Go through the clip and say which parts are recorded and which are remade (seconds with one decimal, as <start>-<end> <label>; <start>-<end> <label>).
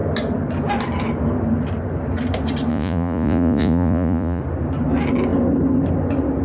0.0-2.7 recorded; 2.7-4.4 remade; 4.4-6.4 recorded